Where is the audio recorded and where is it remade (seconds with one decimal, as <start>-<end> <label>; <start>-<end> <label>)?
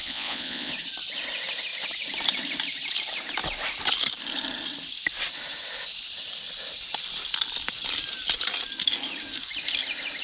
0.0-0.7 remade; 0.7-10.2 recorded